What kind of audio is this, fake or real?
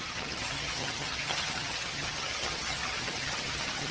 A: fake